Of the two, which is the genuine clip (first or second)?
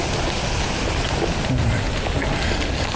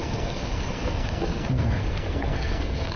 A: first